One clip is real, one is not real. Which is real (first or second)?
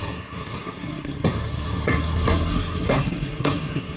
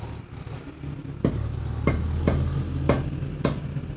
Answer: second